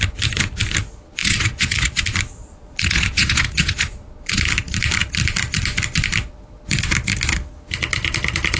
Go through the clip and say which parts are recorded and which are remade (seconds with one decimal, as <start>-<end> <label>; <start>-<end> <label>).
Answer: 0.0-1.2 recorded; 1.2-2.0 remade; 2.0-2.4 recorded; 2.4-4.4 remade; 4.4-8.6 recorded